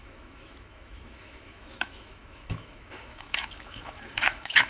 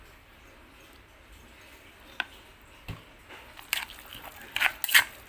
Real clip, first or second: second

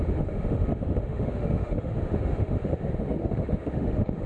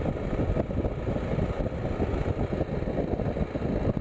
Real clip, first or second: second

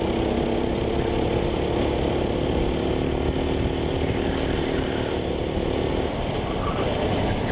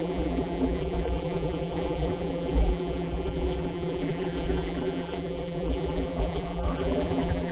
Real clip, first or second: first